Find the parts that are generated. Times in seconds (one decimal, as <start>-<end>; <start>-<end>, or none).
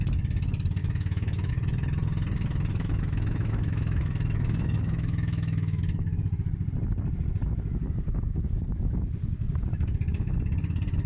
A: 0.8-1.5; 2.7-5.8